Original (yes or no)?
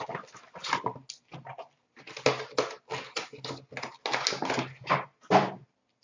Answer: yes